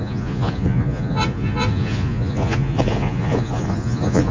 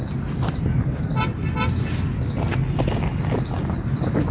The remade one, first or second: first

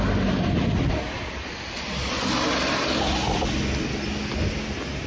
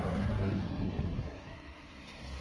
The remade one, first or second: second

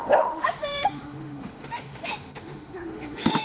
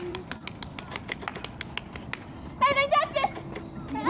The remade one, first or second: first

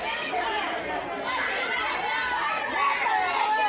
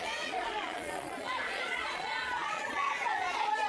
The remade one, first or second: second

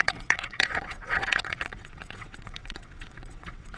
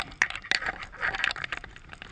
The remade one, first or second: first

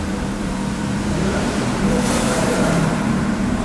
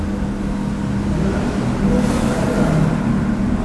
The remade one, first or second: first